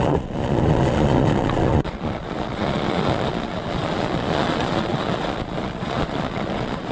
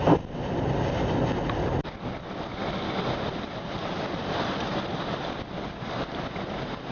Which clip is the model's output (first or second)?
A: first